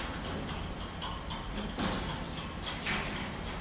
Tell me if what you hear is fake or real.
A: real